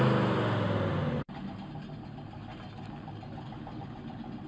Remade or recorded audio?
recorded